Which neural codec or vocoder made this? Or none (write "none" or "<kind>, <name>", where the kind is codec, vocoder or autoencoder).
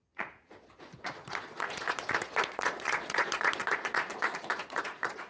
vocoder, Vocos